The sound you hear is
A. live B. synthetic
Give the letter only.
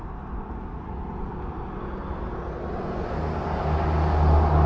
A